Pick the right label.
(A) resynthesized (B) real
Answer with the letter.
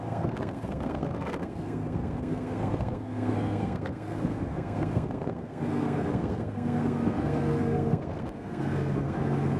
A